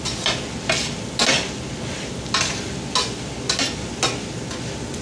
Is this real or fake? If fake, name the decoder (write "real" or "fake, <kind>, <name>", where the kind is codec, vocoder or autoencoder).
real